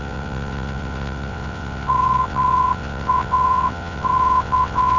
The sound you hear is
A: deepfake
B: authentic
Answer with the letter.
A